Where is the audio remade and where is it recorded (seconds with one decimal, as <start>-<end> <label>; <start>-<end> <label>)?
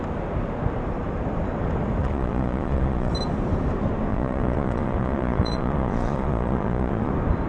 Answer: 0.0-2.0 recorded; 2.0-3.1 remade; 3.1-4.1 recorded; 4.1-7.1 remade; 7.1-7.5 recorded